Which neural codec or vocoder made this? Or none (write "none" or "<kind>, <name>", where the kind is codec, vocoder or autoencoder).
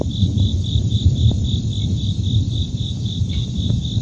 vocoder, BigVGAN v2